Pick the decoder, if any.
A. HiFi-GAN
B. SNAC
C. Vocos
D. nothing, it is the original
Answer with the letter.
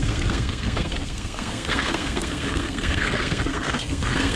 B